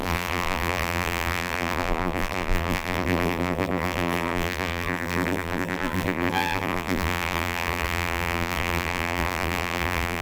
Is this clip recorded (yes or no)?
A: no